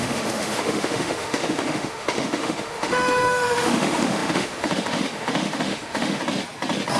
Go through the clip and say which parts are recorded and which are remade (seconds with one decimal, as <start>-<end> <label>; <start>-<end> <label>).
0.0-6.2 remade; 6.2-7.0 recorded